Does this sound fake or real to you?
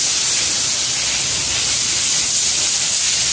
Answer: real